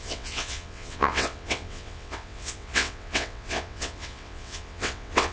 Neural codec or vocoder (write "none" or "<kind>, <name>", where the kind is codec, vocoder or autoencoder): vocoder, WaveNeXt